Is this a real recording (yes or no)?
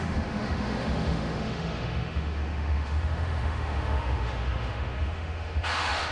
no